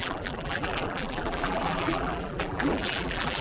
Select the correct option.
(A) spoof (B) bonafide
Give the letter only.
A